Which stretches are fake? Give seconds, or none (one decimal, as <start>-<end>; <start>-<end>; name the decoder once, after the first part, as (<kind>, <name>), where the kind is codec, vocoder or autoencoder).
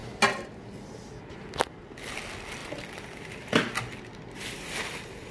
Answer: none